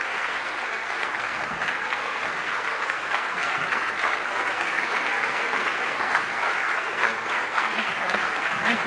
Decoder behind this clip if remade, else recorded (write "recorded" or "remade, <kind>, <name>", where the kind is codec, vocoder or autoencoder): remade, codec, SNAC